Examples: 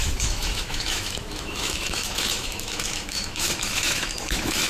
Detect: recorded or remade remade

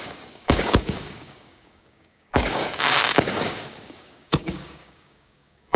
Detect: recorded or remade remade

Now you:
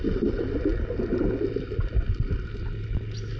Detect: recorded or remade recorded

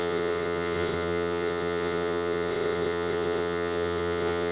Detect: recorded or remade remade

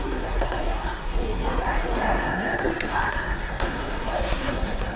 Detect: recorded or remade remade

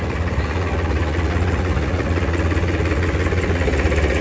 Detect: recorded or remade remade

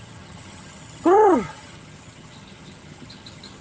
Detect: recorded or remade remade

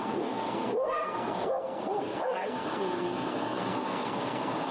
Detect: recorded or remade remade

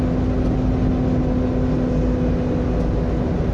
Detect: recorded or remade recorded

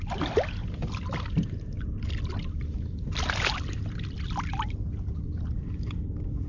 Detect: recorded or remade recorded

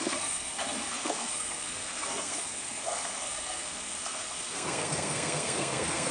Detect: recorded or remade remade